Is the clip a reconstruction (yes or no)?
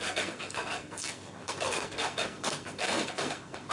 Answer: yes